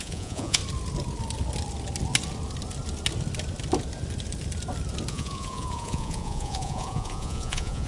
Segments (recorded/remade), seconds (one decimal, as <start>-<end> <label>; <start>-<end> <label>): 0.0-0.6 remade; 0.6-5.1 recorded; 5.1-7.9 remade